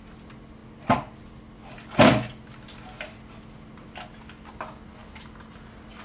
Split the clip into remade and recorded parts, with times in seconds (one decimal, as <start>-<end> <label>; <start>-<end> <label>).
0.0-6.0 recorded